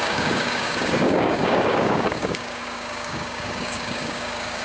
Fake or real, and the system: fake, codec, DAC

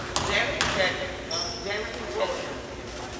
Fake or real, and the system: real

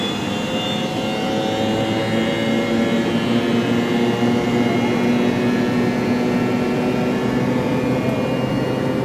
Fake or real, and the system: real